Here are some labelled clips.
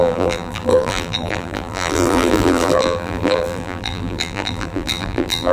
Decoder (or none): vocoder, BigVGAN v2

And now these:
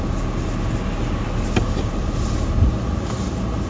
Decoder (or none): none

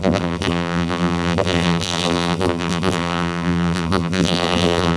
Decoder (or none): vocoder, BigVGAN v2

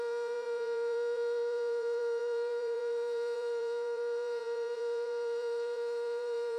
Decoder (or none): vocoder, BigVGAN v2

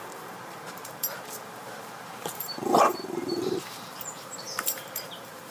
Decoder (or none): vocoder, BigVGAN v2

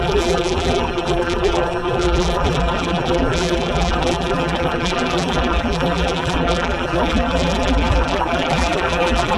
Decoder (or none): vocoder, BigVGAN v2